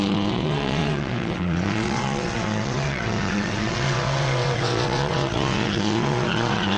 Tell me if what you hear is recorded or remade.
remade